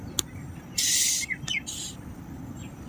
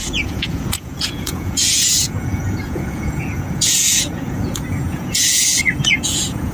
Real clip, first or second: first